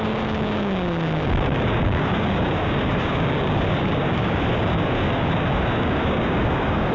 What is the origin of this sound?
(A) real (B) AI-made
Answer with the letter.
B